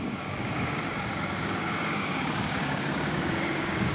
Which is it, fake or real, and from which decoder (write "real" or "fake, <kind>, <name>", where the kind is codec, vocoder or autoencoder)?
fake, codec, DAC